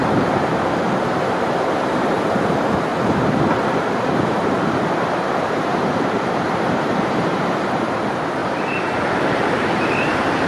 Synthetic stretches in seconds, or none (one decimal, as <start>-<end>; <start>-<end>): 0.0-2.9; 4.0-8.4; 9.2-10.5

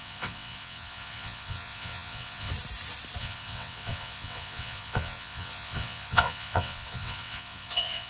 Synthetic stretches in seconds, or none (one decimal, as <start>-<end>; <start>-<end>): 0.0-2.5; 3.2-8.1

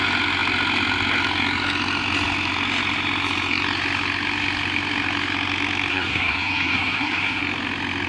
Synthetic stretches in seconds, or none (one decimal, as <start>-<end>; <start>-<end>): 5.9-7.4

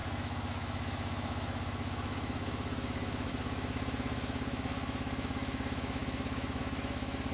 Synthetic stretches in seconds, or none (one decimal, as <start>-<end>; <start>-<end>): 0.0-7.3

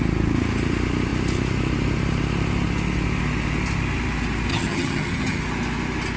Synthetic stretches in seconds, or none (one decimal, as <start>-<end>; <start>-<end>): 4.5-5.4

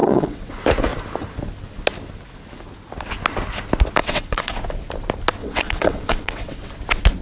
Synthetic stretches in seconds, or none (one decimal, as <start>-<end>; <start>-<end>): 0.0-0.5; 4.0-4.5; 5.4-6.7